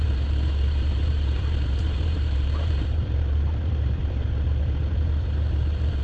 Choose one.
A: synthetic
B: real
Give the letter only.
A